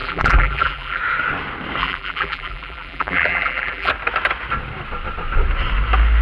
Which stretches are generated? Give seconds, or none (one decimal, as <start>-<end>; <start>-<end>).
0.0-1.0; 1.8-3.9